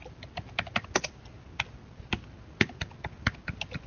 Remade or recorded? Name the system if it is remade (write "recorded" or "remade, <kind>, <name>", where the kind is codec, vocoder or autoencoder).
recorded